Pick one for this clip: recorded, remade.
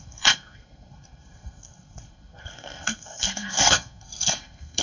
remade